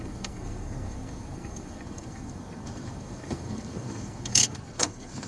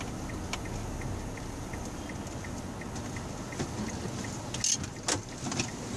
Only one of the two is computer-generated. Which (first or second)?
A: first